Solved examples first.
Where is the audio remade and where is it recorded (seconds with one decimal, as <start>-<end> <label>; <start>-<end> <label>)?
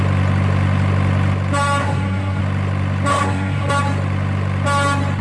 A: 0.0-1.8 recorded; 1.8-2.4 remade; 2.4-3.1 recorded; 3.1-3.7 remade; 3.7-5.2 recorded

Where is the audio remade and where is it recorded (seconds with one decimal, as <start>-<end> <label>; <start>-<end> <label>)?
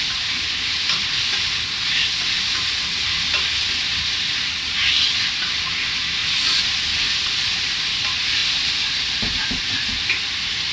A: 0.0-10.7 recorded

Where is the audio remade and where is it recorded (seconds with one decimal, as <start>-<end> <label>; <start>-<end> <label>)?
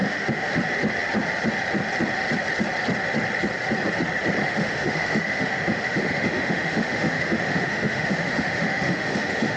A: 0.0-0.5 remade; 0.5-4.4 recorded; 4.4-9.6 remade